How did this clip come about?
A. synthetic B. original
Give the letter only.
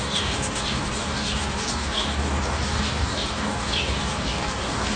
A